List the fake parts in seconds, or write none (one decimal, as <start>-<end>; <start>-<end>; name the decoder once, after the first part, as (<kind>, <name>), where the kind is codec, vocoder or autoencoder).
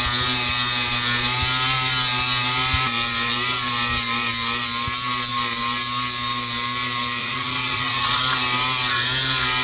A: 7.2-8.2 (vocoder, WaveNeXt)